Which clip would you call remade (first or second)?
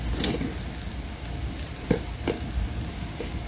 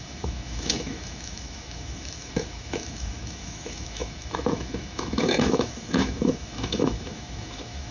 second